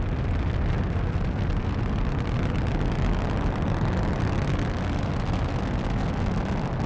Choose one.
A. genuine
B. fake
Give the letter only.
A